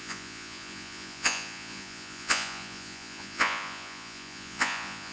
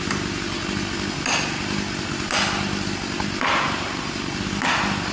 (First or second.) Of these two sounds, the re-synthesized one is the first